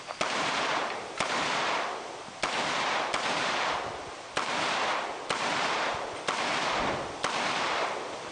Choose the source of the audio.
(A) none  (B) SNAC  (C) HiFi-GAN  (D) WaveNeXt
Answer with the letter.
A